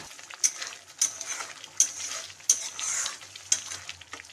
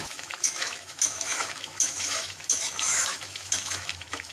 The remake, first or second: second